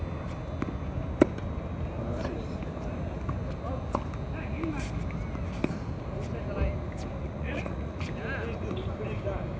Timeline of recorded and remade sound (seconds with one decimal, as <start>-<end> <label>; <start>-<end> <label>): 0.0-7.2 recorded; 7.2-8.0 remade; 8.0-9.6 recorded